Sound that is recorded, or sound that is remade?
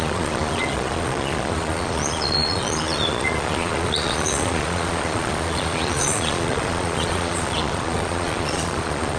remade